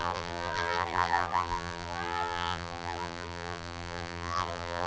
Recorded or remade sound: remade